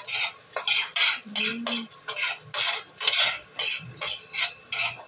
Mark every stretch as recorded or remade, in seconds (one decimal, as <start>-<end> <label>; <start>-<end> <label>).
0.0-5.1 recorded